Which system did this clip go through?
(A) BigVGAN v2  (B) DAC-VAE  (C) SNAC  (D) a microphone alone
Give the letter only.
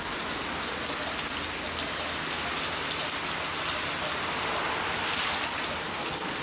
D